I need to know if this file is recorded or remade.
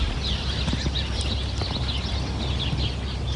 recorded